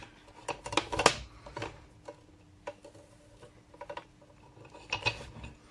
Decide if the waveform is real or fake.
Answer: real